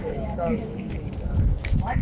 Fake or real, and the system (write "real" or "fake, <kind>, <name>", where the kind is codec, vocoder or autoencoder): fake, codec, DAC